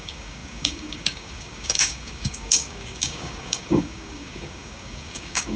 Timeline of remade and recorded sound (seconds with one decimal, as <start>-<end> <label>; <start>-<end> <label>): 0.0-5.6 remade